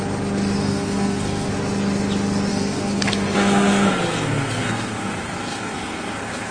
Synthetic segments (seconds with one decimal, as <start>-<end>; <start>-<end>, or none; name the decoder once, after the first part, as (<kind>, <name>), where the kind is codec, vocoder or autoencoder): 0.6-1.5 (codec, SNAC); 2.5-6.5